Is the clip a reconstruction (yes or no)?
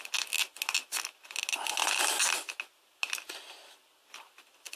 no